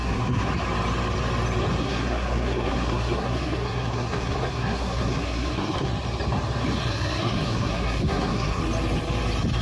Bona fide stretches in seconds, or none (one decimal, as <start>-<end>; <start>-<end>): 0.5-1.8; 5.9-6.9; 8.6-9.6